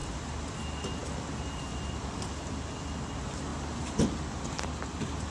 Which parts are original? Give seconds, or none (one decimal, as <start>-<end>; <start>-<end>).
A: 0.0-1.0; 2.5-3.5